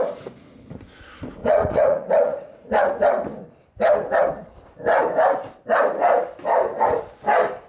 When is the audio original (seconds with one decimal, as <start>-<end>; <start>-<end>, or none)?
0.0-1.4; 2.9-7.7